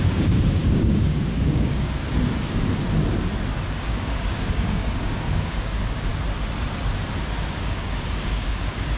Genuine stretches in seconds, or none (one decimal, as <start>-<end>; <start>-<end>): 2.0-3.8; 6.1-7.6